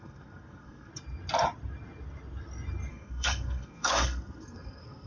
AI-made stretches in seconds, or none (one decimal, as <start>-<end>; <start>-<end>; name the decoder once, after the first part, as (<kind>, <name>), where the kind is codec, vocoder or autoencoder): 0.0-0.9 (codec, SNAC); 2.9-5.1